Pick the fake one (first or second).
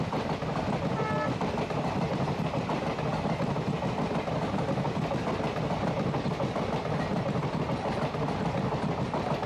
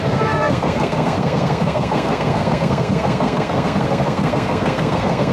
second